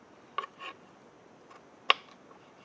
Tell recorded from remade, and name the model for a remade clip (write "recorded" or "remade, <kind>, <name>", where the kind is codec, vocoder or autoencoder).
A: recorded